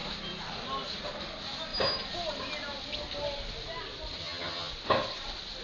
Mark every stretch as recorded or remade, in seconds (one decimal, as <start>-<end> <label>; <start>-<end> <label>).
0.0-4.2 recorded; 4.2-4.7 remade; 4.7-5.6 recorded